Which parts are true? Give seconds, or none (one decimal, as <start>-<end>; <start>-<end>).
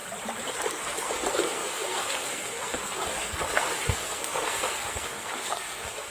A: 0.0-0.7